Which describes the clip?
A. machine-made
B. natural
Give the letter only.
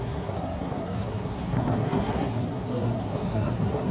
A